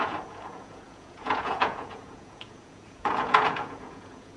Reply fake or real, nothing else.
fake